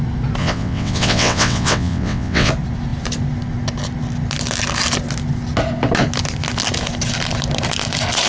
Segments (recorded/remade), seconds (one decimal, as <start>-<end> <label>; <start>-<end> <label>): 0.0-0.4 recorded; 0.4-2.5 remade; 2.5-8.3 recorded